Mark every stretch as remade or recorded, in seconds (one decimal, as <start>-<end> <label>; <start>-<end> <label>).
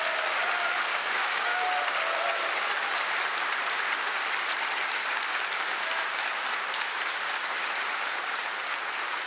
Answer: 0.0-0.9 recorded; 0.9-1.6 remade; 1.6-9.3 recorded